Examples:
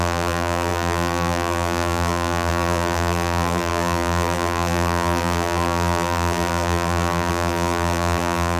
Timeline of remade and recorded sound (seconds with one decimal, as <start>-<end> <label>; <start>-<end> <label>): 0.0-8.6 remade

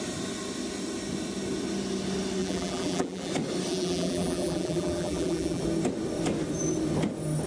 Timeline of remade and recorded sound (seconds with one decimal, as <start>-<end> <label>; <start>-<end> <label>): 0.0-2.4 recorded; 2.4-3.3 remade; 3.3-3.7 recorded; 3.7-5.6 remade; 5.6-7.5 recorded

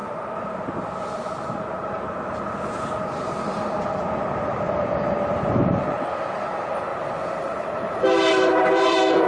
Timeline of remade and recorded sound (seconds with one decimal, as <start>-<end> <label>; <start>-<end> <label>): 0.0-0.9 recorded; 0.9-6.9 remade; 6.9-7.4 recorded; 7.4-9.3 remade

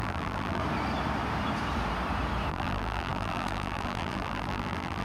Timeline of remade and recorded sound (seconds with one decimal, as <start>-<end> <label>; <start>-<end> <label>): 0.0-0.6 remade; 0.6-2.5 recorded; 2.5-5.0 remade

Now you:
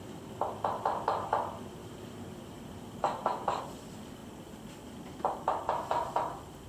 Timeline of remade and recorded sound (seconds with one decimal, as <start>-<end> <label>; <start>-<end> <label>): 0.0-1.8 recorded; 1.8-3.6 remade; 3.6-6.7 recorded

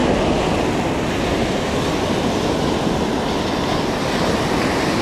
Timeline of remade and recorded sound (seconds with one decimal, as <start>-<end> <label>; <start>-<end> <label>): 0.0-1.3 recorded; 1.3-4.3 remade; 4.3-5.0 recorded

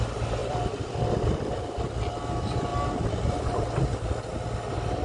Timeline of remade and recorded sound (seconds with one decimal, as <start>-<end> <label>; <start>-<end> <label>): 0.0-0.4 recorded; 0.4-0.9 remade; 0.9-5.0 recorded